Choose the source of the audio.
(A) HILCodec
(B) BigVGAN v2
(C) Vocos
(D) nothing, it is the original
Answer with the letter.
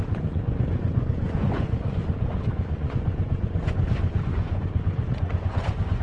C